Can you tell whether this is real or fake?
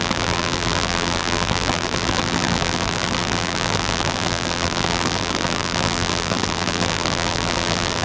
fake